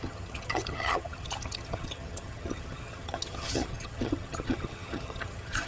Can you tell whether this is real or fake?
fake